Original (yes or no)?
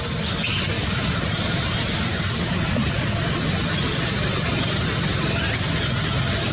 no